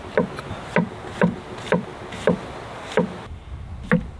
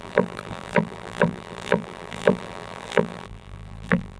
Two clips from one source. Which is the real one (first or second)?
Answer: first